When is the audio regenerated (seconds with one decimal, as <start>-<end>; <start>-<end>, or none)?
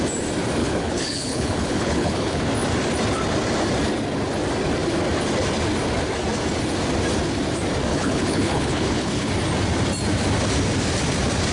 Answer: 0.6-2.4; 7.9-9.3